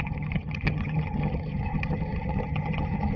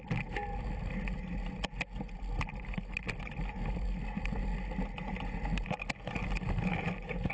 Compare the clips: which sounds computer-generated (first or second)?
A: first